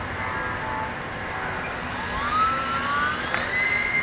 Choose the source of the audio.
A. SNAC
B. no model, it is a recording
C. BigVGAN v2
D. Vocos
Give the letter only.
B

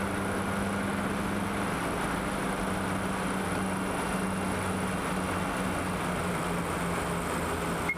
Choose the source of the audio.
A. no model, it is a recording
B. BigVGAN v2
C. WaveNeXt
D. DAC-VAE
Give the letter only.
A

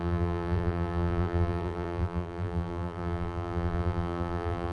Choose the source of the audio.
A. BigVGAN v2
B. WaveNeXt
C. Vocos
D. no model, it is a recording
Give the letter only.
A